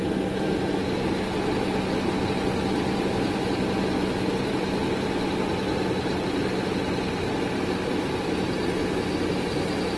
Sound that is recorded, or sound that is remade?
recorded